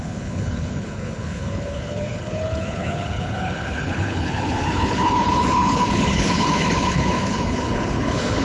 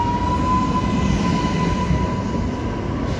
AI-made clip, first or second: first